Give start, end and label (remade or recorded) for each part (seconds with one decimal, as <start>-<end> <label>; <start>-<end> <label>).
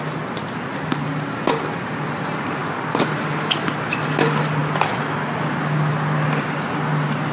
0.0-7.3 recorded